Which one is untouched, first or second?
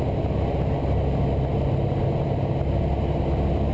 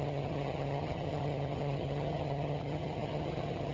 first